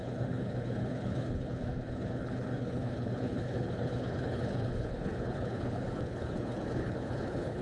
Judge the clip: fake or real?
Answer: fake